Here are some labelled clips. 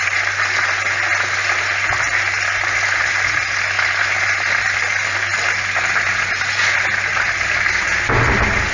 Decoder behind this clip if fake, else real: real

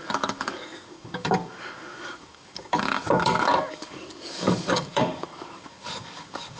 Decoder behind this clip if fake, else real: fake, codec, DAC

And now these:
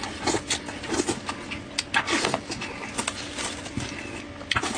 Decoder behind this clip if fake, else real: real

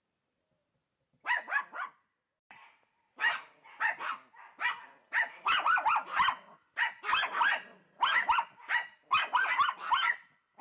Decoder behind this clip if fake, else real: real